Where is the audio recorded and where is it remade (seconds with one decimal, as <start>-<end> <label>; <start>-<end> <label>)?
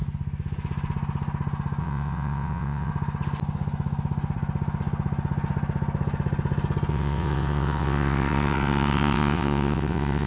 0.0-1.8 recorded; 1.8-2.9 remade; 2.9-6.9 recorded; 6.9-10.3 remade